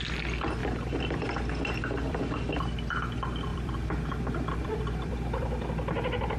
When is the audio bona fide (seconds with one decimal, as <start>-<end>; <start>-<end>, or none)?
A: 0.0-0.6; 2.2-3.5; 5.7-6.4